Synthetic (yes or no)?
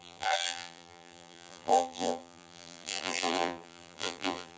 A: yes